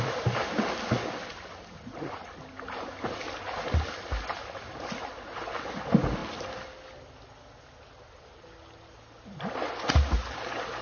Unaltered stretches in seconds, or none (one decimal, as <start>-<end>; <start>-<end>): 0.0-10.8